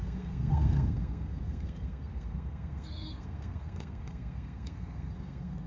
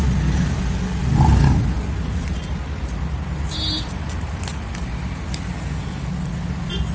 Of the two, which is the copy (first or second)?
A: first